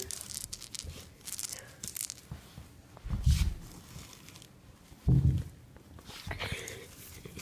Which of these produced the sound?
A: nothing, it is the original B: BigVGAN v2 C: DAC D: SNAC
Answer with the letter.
A